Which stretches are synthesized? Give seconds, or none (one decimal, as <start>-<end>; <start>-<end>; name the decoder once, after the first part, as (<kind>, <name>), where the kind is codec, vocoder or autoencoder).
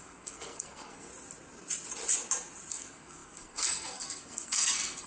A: 0.0-1.1 (codec, SNAC); 2.7-5.1